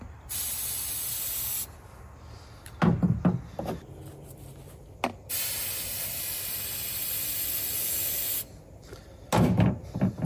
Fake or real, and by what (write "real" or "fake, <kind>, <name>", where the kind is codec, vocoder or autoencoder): real